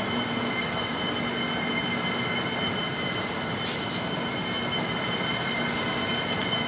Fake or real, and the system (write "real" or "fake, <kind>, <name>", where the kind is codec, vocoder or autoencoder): real